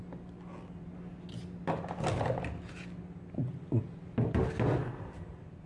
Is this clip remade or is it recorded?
recorded